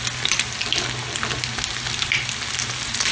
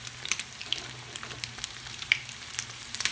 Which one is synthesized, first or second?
second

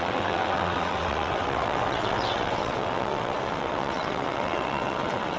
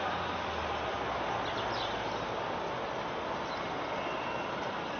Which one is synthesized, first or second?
first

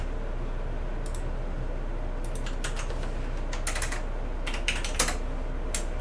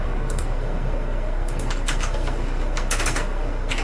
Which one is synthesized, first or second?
second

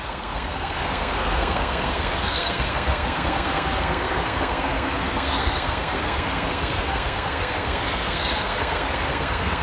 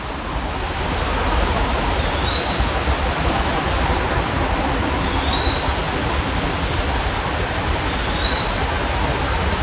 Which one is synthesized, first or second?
first